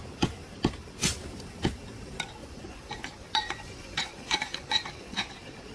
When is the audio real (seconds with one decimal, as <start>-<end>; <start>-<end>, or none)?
0.0-2.4; 5.3-5.7

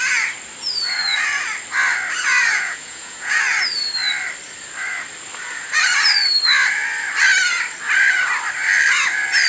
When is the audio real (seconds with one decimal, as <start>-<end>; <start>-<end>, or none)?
0.0-2.5; 3.4-9.5

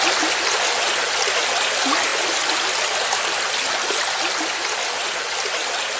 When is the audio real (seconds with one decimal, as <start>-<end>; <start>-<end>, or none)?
0.0-6.0

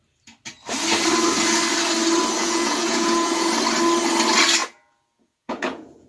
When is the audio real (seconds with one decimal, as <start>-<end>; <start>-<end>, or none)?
0.0-2.4; 3.5-4.6

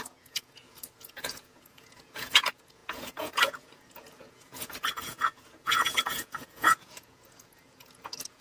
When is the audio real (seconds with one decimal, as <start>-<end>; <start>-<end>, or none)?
none